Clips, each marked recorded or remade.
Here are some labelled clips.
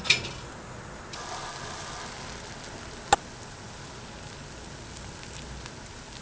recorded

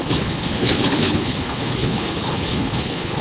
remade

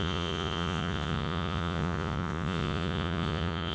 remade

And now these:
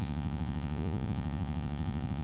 remade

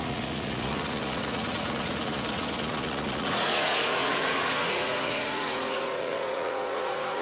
remade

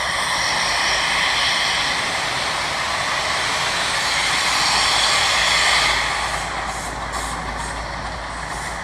recorded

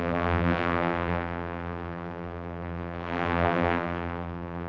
remade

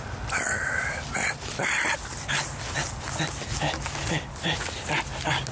recorded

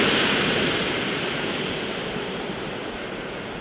recorded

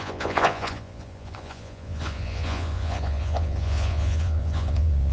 remade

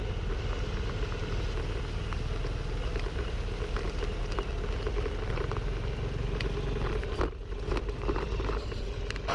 recorded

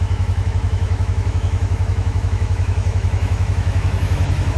remade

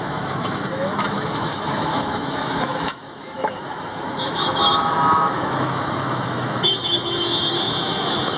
remade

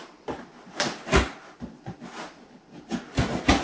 recorded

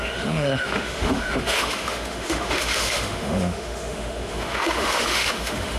remade